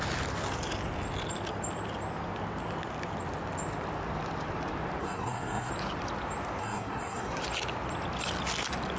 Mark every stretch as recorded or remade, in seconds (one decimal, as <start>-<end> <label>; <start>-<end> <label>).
0.0-5.0 recorded; 5.0-5.7 remade; 5.7-6.6 recorded; 6.6-7.4 remade; 7.4-9.0 recorded